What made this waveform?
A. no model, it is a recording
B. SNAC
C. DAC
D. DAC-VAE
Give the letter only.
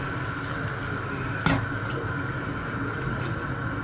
A